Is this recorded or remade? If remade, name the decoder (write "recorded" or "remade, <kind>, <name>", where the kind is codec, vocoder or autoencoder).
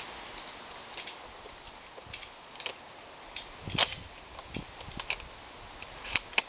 recorded